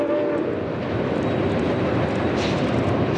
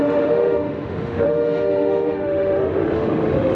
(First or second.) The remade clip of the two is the second